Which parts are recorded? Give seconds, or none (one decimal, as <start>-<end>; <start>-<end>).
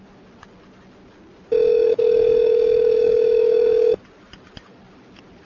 0.0-1.7; 4.0-5.4